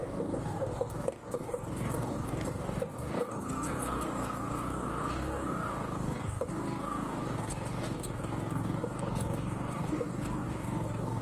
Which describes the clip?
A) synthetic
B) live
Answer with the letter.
A